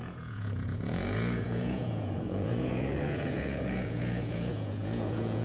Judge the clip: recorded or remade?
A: remade